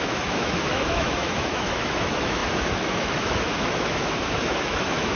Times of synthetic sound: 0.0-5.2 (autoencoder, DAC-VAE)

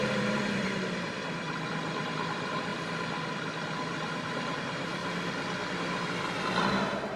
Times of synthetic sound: 0.0-2.7 (vocoder, BigVGAN v2); 3.3-5.0; 6.6-7.2